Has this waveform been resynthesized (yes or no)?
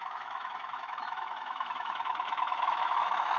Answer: yes